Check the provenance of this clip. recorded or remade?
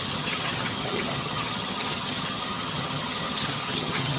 remade